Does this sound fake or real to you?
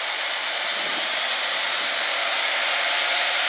fake